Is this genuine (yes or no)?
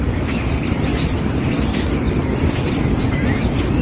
yes